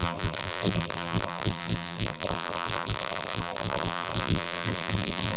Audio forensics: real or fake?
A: fake